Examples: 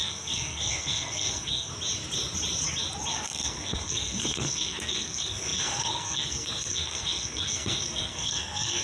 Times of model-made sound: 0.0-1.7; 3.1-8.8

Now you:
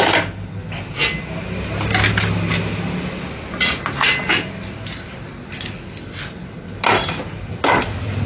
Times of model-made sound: none